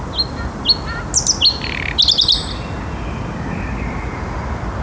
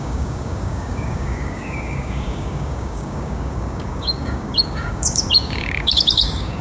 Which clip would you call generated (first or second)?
second